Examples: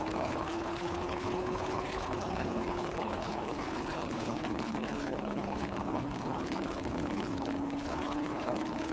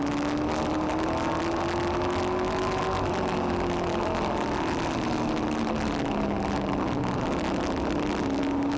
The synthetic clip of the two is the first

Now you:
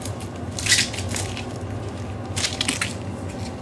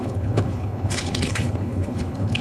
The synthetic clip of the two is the second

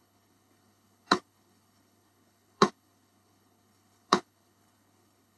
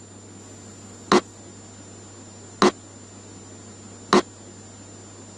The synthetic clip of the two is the first